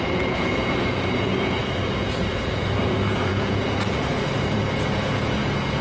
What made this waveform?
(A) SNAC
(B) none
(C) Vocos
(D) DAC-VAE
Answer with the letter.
C